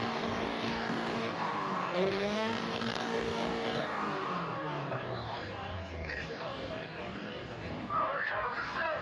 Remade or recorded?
remade